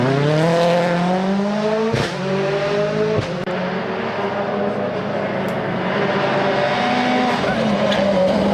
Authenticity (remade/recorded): recorded